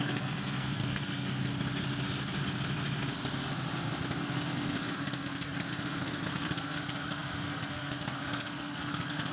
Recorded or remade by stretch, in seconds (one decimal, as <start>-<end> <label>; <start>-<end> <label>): 0.0-1.5 remade; 1.5-4.2 recorded; 4.2-9.3 remade